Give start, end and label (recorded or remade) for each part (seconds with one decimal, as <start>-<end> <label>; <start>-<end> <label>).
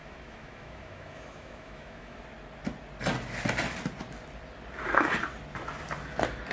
0.0-2.2 remade; 2.2-6.5 recorded